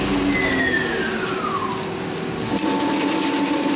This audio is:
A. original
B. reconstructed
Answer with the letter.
A